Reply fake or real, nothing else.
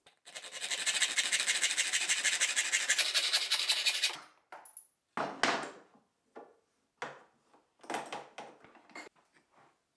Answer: real